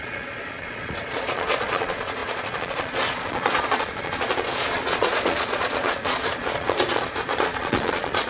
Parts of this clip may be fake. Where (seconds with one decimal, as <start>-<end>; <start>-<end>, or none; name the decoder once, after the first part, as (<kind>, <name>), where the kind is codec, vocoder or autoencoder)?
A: 0.0-8.3 (vocoder, Vocos)

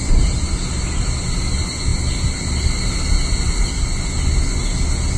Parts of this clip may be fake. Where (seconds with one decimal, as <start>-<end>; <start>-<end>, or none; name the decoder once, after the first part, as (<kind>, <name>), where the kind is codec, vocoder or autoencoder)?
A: none